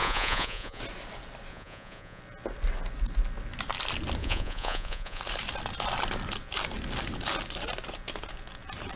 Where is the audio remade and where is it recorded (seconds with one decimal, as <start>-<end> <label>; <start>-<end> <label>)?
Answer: 0.0-0.8 remade; 0.8-1.5 recorded; 1.5-2.2 remade; 2.2-4.2 recorded; 4.2-5.2 remade; 5.2-9.0 recorded